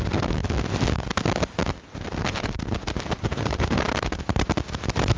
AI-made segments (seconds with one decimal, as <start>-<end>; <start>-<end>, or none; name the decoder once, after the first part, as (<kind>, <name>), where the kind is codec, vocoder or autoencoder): 0.0-0.4 (vocoder, BigVGAN v2); 2.2-5.2